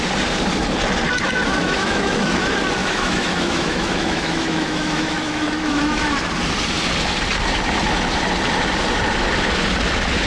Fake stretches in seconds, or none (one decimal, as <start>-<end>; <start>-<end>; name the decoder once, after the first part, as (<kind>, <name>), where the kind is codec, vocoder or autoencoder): 1.6-2.4 (autoencoder, DAC-VAE); 2.8-6.1